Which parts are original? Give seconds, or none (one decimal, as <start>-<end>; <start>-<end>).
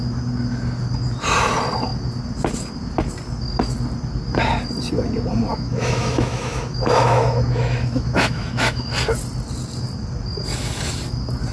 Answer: 0.0-5.5; 8.9-11.5